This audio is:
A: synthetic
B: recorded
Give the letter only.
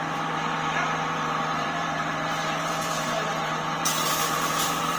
A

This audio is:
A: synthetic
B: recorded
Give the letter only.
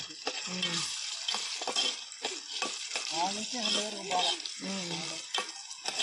B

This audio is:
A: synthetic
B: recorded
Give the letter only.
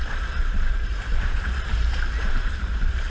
A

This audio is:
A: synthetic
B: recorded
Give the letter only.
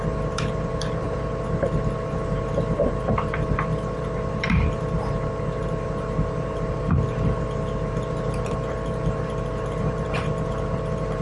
A